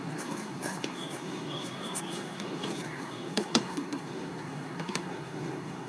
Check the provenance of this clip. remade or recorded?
remade